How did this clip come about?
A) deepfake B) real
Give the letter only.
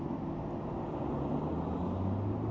B